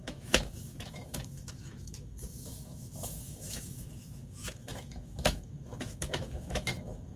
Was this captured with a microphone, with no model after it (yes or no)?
no